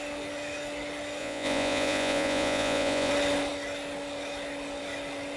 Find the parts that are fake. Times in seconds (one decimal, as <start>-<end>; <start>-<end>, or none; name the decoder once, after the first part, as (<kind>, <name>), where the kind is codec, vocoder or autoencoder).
1.2-3.1 (vocoder, Vocos)